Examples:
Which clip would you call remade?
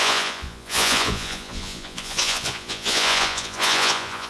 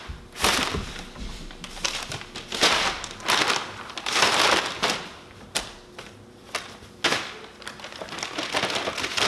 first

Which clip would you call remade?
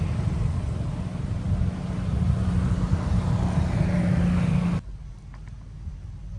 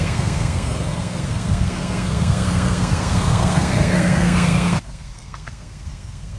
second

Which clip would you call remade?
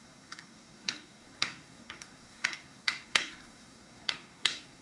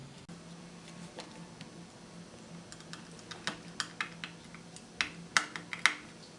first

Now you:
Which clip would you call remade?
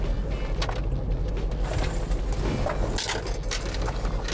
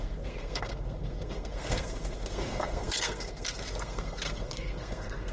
second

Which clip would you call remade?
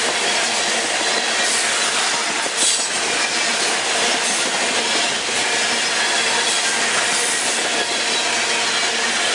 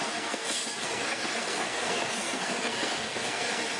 second